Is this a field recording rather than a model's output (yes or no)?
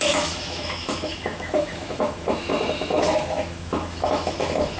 no